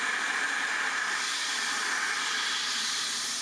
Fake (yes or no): no